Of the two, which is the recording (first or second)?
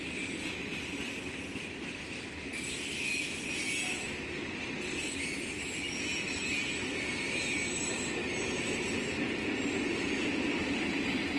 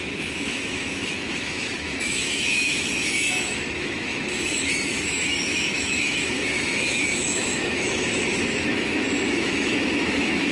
first